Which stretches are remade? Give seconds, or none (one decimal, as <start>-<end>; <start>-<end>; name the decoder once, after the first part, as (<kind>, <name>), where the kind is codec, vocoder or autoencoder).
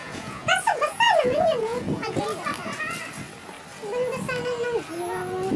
0.0-2.2 (vocoder, Vocos)